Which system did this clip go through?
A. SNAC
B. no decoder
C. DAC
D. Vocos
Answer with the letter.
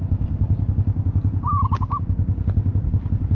B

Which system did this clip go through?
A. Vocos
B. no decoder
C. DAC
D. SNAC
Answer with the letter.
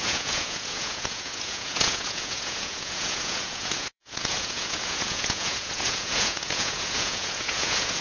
A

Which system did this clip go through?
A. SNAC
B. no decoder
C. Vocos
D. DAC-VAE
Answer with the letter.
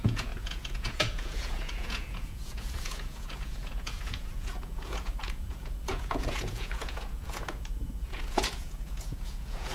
C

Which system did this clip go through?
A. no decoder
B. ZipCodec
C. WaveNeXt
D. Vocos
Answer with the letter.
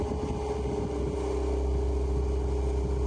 A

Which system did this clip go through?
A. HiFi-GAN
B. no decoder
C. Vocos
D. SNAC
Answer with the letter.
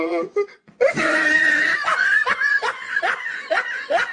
C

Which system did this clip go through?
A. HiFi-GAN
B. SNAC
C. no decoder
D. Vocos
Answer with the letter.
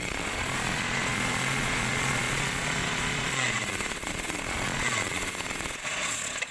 D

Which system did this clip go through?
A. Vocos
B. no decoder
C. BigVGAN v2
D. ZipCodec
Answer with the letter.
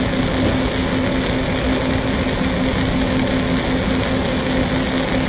B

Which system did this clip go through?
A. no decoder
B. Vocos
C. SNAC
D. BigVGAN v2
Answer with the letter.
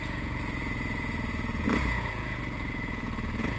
B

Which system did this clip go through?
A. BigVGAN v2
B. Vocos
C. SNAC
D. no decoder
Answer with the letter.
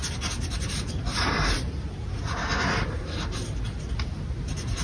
D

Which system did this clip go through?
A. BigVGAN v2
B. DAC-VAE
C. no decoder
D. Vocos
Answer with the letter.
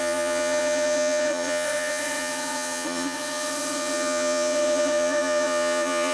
D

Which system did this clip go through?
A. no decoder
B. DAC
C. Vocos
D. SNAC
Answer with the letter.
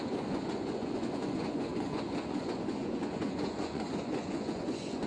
C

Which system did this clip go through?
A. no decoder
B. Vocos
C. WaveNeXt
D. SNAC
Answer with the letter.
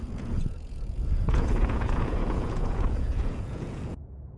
B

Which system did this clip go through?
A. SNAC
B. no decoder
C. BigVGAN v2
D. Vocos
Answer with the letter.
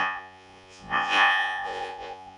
D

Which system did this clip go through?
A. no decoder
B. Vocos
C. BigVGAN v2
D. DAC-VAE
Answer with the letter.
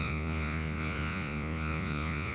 B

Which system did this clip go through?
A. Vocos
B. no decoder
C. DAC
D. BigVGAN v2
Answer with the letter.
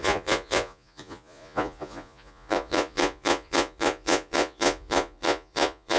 A